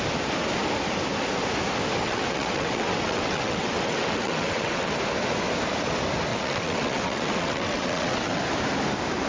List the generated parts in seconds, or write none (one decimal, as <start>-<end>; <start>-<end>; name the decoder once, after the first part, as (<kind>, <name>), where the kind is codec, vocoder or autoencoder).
2.0-4.9 (vocoder, WaveNeXt); 6.3-8.4